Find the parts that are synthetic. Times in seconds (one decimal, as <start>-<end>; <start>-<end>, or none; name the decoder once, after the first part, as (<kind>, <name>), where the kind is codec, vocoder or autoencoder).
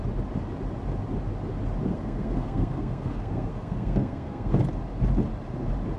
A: 1.9-4.6 (codec, SNAC)